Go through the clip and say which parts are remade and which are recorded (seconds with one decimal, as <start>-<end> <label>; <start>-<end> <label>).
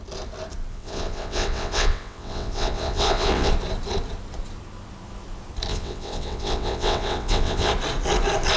0.0-0.7 recorded; 0.7-3.5 remade; 3.5-5.7 recorded; 5.7-7.7 remade; 7.7-8.6 recorded